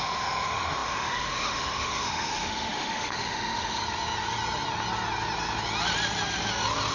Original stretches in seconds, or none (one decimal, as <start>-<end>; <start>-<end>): 3.8-6.9